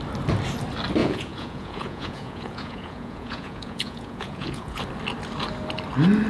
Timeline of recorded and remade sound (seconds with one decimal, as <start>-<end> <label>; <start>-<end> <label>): 0.0-1.0 recorded; 1.0-4.8 remade; 4.8-6.3 recorded

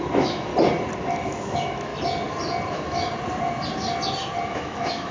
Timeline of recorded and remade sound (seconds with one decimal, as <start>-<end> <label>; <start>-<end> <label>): 0.0-0.5 remade; 0.5-1.0 recorded; 1.0-1.9 remade; 1.9-2.7 recorded; 2.7-3.1 remade; 3.1-4.4 recorded; 4.4-5.1 remade

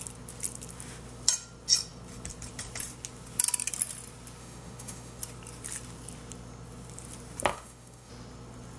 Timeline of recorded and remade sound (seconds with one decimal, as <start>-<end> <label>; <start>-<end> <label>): 0.0-4.4 recorded; 4.4-5.2 remade; 5.2-7.5 recorded; 7.5-8.1 remade; 8.1-8.8 recorded

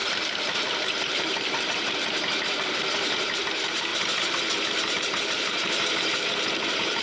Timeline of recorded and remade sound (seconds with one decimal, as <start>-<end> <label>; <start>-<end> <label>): 0.0-3.9 remade; 3.9-4.9 recorded; 4.9-7.0 remade